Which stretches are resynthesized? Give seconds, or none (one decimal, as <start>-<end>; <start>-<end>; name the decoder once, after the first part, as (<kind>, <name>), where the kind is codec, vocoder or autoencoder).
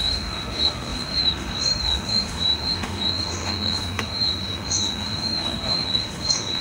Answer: 0.0-6.6 (autoencoder, DAC-VAE)